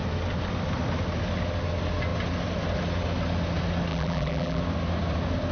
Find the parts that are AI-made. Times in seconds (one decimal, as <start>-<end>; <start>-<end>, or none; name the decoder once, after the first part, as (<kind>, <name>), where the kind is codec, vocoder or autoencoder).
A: 3.9-4.6 (vocoder, BigVGAN v2)

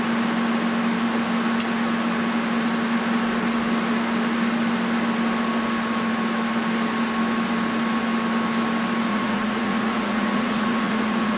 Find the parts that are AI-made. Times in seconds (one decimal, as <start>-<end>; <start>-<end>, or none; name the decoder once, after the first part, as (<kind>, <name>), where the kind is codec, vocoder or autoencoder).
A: 9.1-11.4 (vocoder, Vocos)

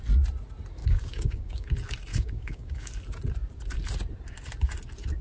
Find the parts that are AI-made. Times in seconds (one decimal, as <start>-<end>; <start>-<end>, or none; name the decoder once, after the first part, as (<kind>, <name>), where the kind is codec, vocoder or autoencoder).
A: 0.8-1.7 (codec, DAC); 2.1-2.9